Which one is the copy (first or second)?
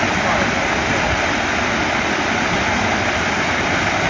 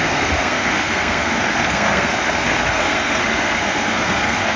second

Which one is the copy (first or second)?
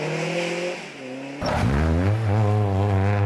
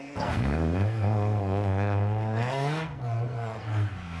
second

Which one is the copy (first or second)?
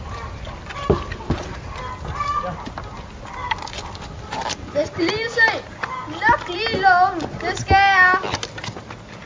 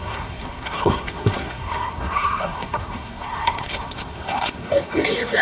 second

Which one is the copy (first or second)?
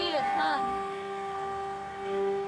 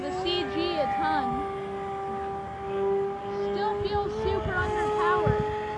first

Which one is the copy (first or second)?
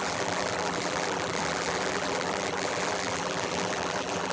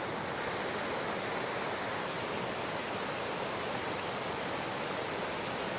first